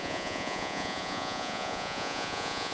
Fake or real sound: fake